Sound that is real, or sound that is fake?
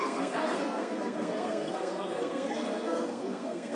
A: fake